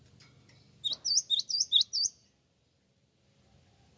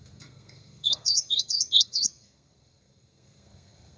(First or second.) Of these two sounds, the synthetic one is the second